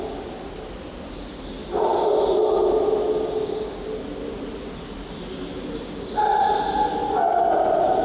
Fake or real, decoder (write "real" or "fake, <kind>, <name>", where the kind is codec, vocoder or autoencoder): real